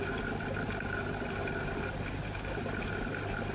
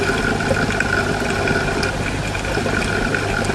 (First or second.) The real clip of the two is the second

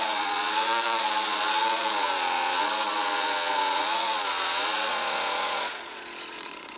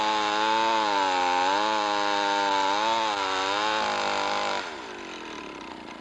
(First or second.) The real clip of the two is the second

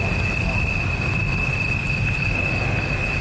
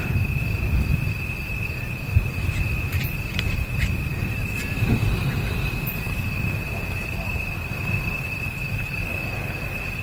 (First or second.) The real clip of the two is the first